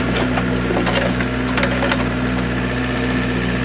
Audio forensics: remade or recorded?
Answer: recorded